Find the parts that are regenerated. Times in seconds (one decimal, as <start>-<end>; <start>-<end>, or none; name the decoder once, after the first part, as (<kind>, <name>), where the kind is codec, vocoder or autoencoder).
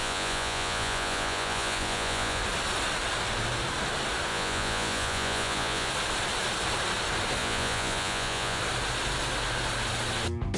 0.0-2.4 (vocoder, Vocos); 4.3-5.9; 7.4-8.6